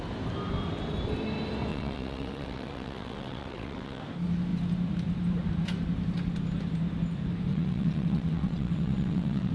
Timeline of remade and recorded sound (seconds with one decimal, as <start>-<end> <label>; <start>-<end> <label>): 0.0-1.7 recorded; 1.7-4.0 remade; 4.0-7.5 recorded; 7.5-9.5 remade